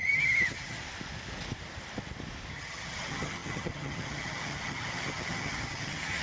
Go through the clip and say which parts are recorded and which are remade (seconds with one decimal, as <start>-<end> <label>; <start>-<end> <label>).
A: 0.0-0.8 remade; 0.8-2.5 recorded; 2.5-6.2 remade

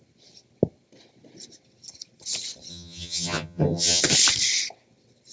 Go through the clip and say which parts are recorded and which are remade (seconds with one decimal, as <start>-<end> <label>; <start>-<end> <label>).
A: 0.0-2.7 recorded; 2.7-4.0 remade; 4.0-5.3 recorded

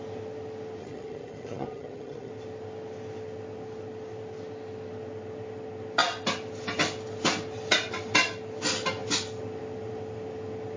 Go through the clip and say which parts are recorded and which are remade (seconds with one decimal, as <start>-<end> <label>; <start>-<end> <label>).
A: 0.0-0.8 recorded; 0.8-2.3 remade; 2.3-10.8 recorded